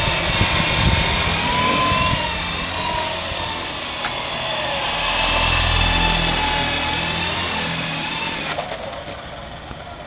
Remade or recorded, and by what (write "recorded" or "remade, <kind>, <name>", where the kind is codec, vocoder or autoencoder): recorded